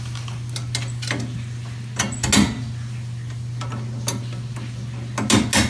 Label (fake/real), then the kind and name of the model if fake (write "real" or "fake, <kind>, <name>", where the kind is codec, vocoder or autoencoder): real